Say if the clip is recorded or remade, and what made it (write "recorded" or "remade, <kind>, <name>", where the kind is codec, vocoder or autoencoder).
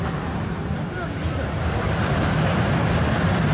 recorded